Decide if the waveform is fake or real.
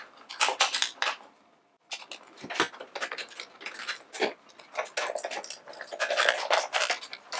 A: real